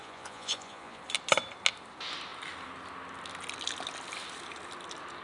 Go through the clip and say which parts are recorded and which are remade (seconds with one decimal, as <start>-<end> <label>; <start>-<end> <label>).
0.0-1.0 remade; 1.0-5.2 recorded